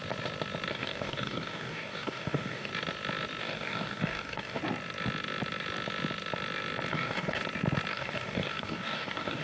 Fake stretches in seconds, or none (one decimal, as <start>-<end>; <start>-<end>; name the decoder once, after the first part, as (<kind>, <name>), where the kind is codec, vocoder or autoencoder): 0.7-2.7 (codec, DAC); 3.4-4.6; 6.9-7.4; 7.9-9.4

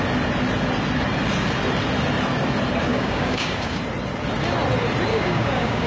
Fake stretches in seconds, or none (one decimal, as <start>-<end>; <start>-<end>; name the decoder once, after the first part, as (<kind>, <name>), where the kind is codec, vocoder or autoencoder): 2.9-3.8 (codec, DAC); 5.1-5.9

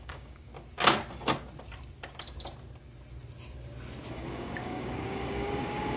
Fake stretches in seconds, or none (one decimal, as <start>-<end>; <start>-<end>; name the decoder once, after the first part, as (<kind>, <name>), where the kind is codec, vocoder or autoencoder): 0.0-0.5 (codec, DAC); 4.1-6.0

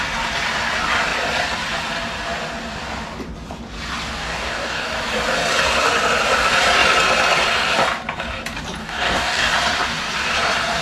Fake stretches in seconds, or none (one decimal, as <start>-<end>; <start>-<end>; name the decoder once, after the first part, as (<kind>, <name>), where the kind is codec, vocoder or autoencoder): 4.2-5.0 (codec, DAC); 8.8-9.5

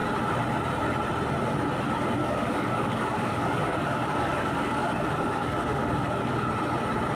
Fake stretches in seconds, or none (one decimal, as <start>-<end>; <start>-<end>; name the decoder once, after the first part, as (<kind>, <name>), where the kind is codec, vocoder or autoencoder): 2.2-6.5 (codec, DAC)

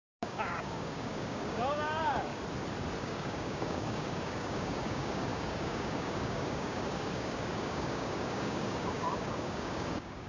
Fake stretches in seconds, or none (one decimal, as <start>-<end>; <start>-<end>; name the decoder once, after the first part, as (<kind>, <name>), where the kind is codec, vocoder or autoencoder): 0.0-2.3 (codec, DAC); 3.0-10.3

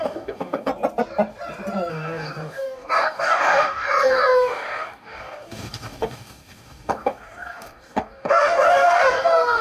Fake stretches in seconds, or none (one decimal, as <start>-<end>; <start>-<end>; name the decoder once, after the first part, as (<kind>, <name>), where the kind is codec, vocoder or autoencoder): 0.0-0.7 (codec, DAC); 1.9-9.6

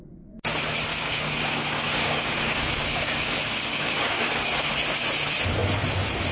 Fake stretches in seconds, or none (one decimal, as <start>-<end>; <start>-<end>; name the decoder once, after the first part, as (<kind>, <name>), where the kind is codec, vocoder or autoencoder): 0.9-4.7 (codec, DAC)